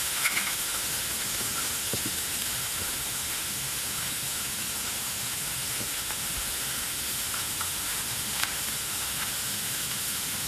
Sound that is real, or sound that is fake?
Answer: fake